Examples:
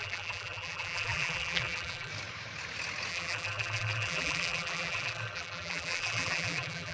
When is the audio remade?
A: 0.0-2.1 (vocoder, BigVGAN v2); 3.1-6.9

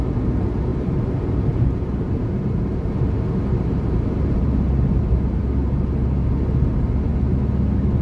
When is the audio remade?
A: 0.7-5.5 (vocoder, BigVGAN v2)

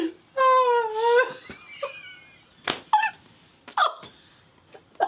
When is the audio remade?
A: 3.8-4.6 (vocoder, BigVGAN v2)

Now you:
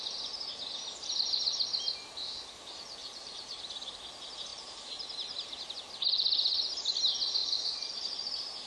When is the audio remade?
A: 3.0-3.6 (vocoder, BigVGAN v2); 4.5-5.5; 7.4-7.9

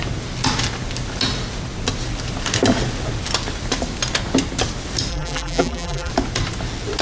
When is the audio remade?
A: 5.1-6.1 (vocoder, BigVGAN v2)

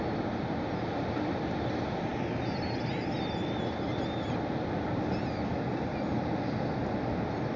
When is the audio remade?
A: none